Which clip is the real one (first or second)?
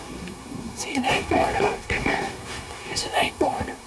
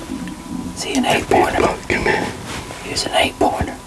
second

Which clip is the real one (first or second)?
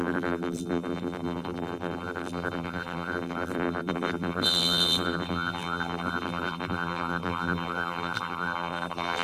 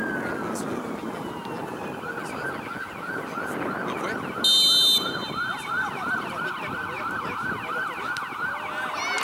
second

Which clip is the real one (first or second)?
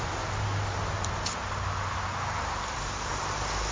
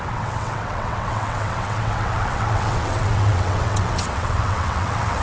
first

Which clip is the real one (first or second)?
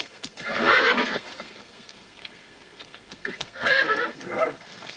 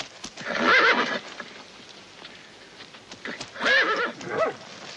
second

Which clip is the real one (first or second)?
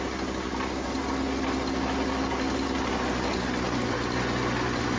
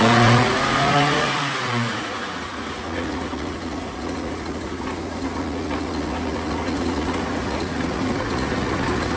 first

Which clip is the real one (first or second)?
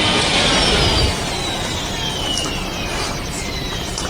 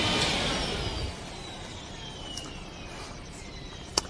first